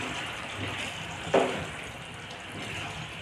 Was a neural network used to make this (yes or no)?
no